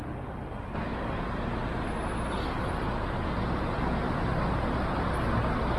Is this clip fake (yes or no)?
no